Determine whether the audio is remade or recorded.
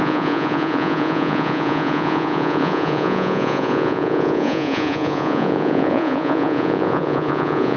remade